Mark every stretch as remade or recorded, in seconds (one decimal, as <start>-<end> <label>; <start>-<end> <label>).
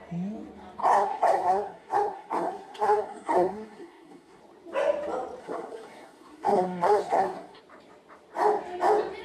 0.0-0.8 recorded; 0.8-4.4 remade; 4.4-5.4 recorded; 5.4-7.6 remade; 7.6-9.2 recorded